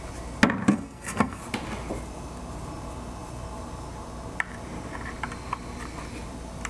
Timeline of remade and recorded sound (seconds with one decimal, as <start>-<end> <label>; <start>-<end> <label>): 0.0-0.7 recorded; 0.7-1.4 remade; 1.4-6.7 recorded

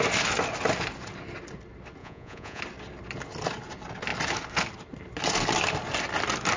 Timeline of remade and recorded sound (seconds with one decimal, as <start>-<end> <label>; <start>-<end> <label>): 0.0-2.0 recorded; 2.0-2.6 remade; 2.6-6.6 recorded

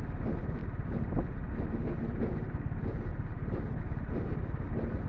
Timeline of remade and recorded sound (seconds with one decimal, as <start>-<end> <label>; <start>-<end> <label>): 0.0-5.1 recorded